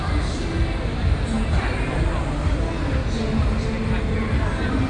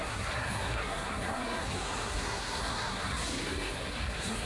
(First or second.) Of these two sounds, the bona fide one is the first